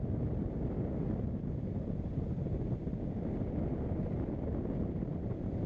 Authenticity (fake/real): real